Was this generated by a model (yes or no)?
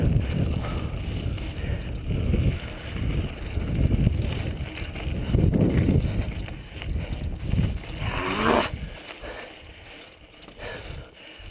no